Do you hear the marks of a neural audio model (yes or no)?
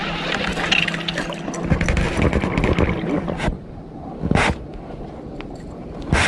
no